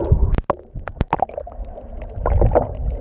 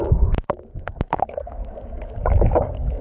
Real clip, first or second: first